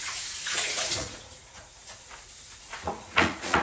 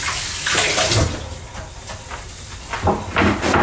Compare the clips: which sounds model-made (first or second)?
first